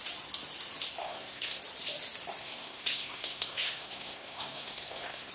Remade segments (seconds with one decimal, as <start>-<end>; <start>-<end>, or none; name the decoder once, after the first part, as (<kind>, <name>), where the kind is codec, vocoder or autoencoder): 1.0-1.6 (codec, SNAC); 2.4-5.3